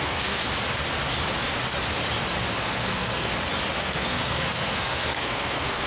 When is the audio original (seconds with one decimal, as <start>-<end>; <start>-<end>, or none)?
0.4-2.6; 3.3-3.8